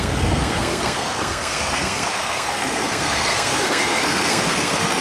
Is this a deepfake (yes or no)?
yes